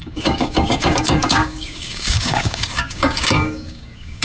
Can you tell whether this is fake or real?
fake